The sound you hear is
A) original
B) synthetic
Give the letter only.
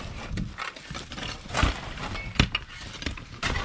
A